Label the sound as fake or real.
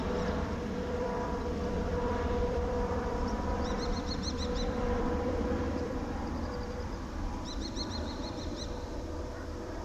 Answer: fake